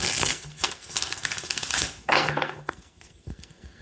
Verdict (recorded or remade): remade